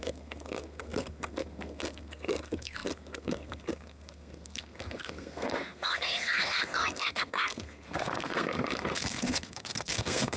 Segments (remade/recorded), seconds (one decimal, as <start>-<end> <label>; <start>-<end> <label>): 0.0-10.4 remade

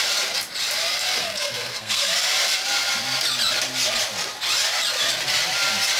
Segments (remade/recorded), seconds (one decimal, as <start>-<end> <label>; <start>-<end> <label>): 0.0-1.2 recorded; 1.2-2.1 remade; 2.1-6.0 recorded

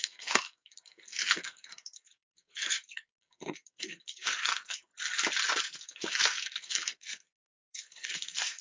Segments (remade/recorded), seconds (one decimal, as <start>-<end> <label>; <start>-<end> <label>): 0.0-4.9 remade; 4.9-5.6 recorded; 5.6-8.6 remade

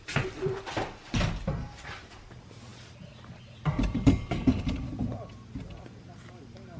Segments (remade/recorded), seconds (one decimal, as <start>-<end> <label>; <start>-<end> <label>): 0.0-6.8 recorded

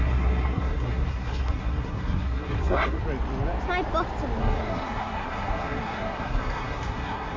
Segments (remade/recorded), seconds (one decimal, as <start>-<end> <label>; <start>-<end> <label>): 0.0-3.0 remade; 3.0-4.4 recorded; 4.4-7.4 remade

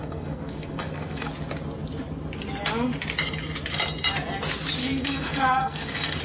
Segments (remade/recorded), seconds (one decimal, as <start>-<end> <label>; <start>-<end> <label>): 0.0-1.3 remade; 1.3-4.8 recorded; 4.8-6.2 remade

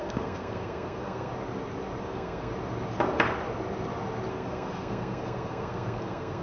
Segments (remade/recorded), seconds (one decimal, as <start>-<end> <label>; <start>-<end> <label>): 0.0-1.3 remade; 1.3-2.0 recorded; 2.0-2.5 remade; 2.5-4.3 recorded; 4.3-6.4 remade

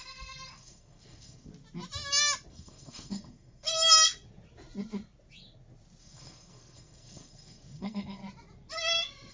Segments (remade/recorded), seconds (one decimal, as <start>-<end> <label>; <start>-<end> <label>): 0.0-1.5 remade; 1.5-2.5 recorded; 2.5-3.7 remade; 3.7-6.0 recorded; 6.0-8.2 remade; 8.2-9.3 recorded